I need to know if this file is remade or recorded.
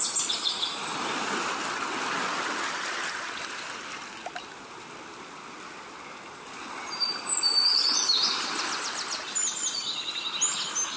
recorded